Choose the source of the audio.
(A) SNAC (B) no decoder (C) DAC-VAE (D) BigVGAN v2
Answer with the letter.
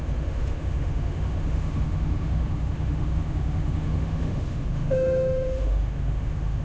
C